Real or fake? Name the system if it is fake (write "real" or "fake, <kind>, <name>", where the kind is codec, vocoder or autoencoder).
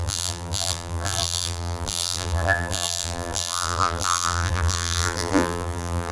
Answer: fake, vocoder, BigVGAN v2